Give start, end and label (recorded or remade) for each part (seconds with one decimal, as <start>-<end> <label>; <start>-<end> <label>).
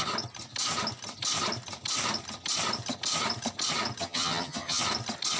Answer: 0.0-4.0 recorded; 4.0-4.8 remade; 4.8-5.4 recorded